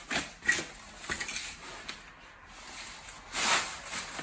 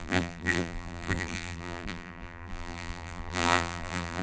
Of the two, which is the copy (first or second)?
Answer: second